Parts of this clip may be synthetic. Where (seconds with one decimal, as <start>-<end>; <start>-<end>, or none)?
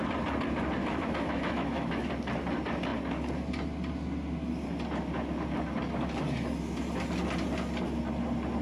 0.8-2.1